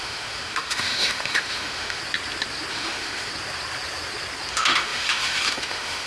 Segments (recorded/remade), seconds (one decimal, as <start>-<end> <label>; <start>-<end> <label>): 0.0-2.0 remade; 2.0-2.7 recorded; 2.7-3.3 remade; 3.3-4.5 recorded; 4.5-6.1 remade